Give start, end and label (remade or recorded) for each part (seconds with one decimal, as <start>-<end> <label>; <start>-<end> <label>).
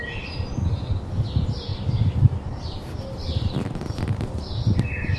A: 0.0-5.2 recorded